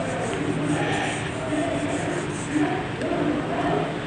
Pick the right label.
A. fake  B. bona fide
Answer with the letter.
B